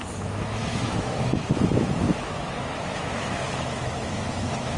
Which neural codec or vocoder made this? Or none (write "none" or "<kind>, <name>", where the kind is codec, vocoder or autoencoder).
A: autoencoder, DAC-VAE